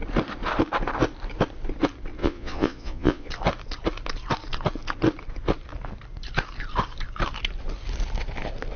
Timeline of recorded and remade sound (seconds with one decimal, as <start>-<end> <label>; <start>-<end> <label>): 0.0-2.2 recorded; 2.2-3.3 remade; 3.3-8.8 recorded